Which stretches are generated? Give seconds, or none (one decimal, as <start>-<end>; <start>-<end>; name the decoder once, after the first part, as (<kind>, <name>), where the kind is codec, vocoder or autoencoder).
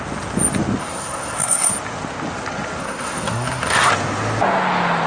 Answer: 0.8-1.7 (codec, SNAC); 2.8-3.9